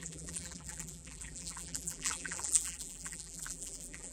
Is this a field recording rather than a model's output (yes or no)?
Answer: no